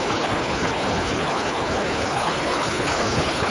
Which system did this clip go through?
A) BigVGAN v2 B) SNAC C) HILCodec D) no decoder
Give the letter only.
C